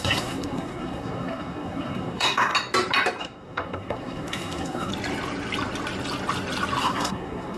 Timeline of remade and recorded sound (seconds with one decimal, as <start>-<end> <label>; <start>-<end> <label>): 0.0-2.5 remade; 2.5-3.2 recorded; 3.2-4.9 remade; 4.9-6.8 recorded; 6.8-7.6 remade